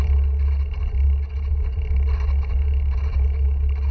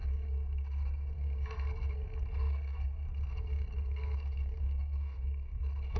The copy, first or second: second